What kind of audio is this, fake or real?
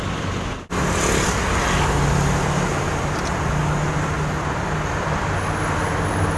real